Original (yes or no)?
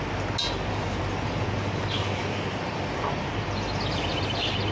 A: yes